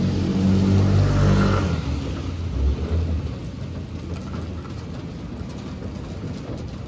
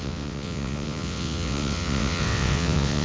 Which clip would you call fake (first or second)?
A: second